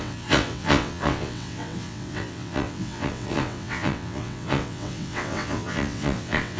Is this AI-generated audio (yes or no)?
yes